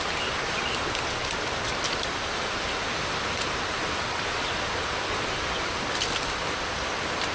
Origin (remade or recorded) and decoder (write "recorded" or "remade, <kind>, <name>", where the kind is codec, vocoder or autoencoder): recorded